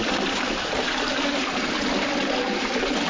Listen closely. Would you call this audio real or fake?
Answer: real